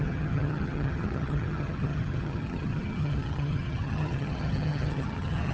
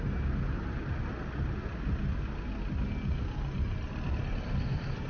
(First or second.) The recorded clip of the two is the second